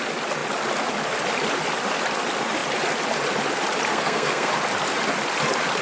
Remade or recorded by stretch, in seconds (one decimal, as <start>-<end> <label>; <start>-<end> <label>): 0.0-3.9 recorded; 3.9-4.5 remade; 4.5-5.8 recorded